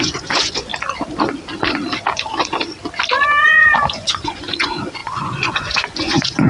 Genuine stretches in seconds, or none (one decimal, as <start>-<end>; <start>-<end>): 0.7-3.4